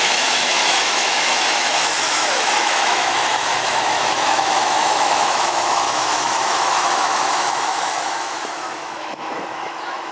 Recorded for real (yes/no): no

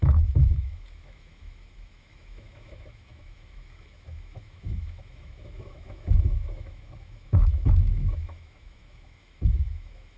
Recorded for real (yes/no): no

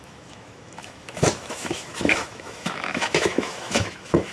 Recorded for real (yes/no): no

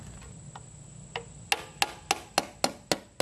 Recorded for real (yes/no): yes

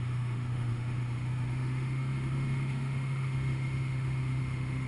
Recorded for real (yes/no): no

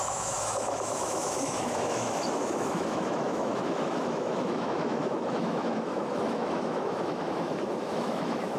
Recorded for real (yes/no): no